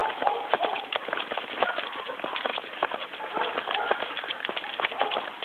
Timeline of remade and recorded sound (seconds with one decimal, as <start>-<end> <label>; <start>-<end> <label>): 0.0-5.4 recorded